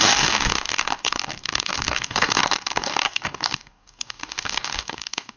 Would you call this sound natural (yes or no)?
no